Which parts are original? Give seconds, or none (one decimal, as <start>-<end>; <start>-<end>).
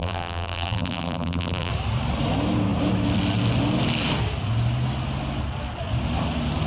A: 1.7-6.7